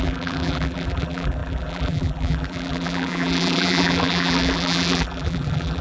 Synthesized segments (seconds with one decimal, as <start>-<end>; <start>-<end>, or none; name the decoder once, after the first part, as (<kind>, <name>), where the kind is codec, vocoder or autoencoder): 0.0-5.8 (vocoder, BigVGAN v2)